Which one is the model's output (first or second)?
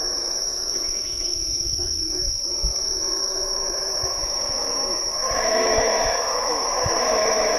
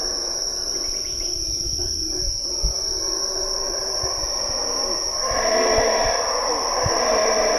first